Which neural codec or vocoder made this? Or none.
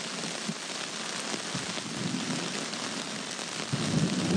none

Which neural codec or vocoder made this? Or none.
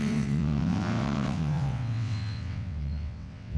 vocoder, WaveNeXt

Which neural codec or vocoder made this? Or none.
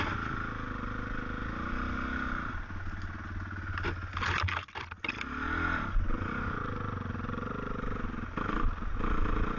none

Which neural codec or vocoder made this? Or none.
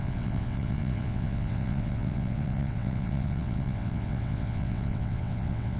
vocoder, WaveNeXt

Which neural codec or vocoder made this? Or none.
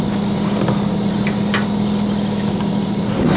none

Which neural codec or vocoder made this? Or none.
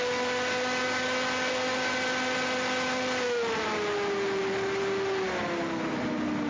none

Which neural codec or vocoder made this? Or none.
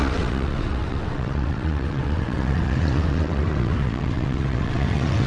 vocoder, WaveNeXt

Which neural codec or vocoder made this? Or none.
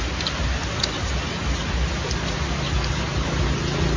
none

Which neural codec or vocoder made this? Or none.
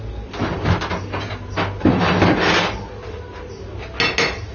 none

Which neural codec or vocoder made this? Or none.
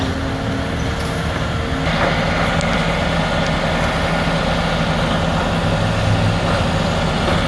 none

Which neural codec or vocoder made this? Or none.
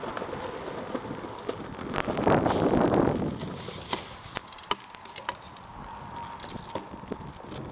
none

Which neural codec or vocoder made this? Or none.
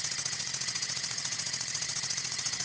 vocoder, WaveNeXt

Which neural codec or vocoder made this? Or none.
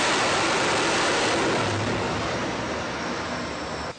none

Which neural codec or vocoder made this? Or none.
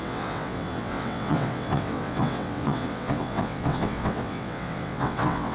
vocoder, WaveNeXt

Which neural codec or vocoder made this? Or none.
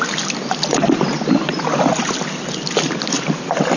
none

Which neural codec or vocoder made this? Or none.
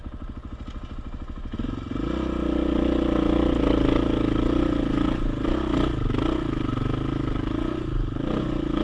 none